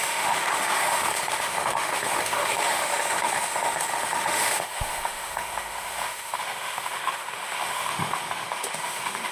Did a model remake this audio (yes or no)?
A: yes